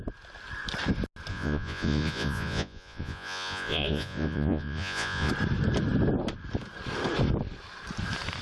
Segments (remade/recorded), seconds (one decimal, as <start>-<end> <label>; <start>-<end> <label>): 0.0-1.3 recorded; 1.3-5.3 remade; 5.3-8.4 recorded